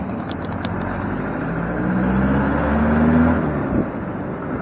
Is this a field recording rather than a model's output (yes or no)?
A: yes